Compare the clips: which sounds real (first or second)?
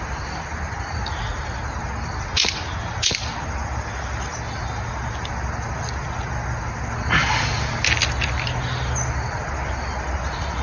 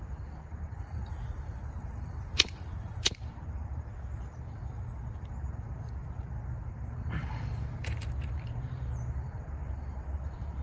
first